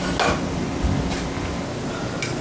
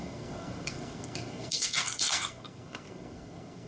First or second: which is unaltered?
first